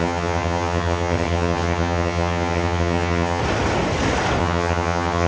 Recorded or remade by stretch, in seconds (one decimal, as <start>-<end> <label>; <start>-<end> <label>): 0.0-3.4 remade; 3.4-4.4 recorded; 4.4-5.3 remade